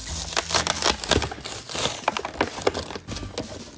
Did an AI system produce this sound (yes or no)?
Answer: no